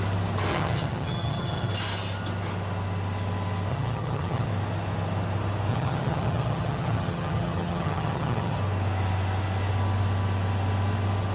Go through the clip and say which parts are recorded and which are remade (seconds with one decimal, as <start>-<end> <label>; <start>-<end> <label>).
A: 0.0-0.5 recorded; 0.5-1.7 remade; 1.7-3.7 recorded; 3.7-4.5 remade; 4.5-5.7 recorded; 5.7-8.6 remade; 8.6-11.3 recorded